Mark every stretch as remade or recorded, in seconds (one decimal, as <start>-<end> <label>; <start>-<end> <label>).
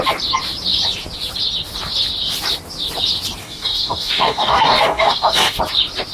0.0-3.4 recorded; 3.4-5.6 remade; 5.6-6.1 recorded